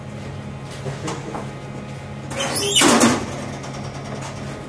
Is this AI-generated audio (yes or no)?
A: no